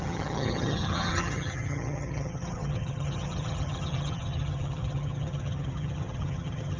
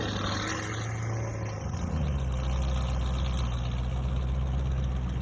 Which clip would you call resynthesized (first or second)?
first